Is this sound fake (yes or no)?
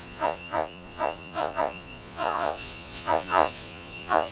yes